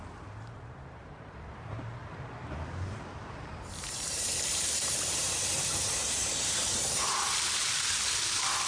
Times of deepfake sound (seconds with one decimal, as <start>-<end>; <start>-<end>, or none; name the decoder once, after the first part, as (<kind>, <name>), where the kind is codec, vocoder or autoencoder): 0.0-2.0 (vocoder, BigVGAN v2); 3.1-8.7